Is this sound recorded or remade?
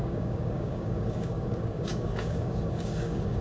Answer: remade